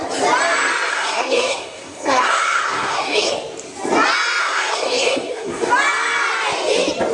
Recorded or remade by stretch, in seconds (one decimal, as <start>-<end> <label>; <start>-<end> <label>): 0.0-0.9 recorded; 0.9-3.3 remade; 3.3-4.4 recorded; 4.4-5.7 remade; 5.7-7.1 recorded